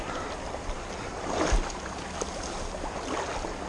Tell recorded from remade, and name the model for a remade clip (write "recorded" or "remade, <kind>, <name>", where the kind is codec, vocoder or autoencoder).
recorded